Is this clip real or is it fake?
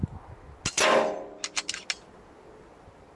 real